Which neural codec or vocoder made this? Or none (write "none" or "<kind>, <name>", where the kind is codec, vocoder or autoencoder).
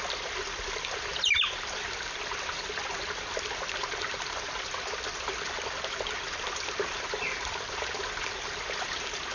none